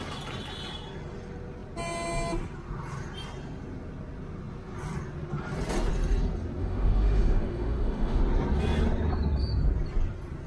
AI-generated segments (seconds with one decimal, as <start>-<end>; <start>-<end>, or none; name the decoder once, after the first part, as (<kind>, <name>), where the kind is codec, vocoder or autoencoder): 6.6-8.2 (autoencoder, DAC-VAE)